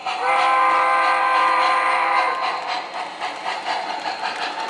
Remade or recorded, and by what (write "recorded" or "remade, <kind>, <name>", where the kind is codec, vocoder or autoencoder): recorded